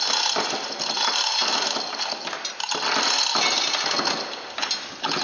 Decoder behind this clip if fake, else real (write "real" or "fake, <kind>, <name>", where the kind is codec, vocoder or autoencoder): real